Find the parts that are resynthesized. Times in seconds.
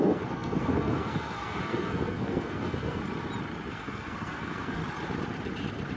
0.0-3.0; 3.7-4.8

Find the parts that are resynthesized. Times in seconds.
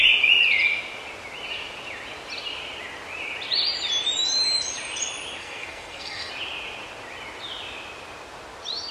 5.4-6.3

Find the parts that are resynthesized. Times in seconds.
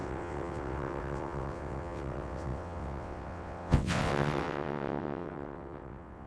0.0-6.3